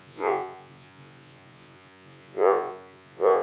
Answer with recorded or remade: remade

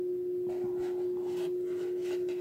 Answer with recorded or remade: recorded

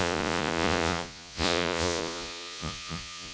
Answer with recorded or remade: remade